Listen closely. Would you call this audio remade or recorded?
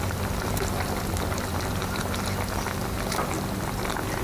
recorded